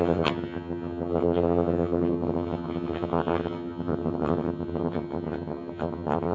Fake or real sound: fake